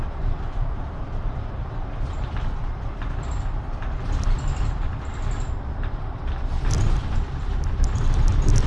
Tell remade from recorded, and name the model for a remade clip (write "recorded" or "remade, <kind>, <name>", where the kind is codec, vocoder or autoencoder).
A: remade, vocoder, BigVGAN v2